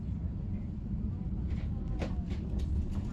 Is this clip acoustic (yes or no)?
yes